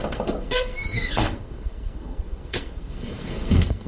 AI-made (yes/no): yes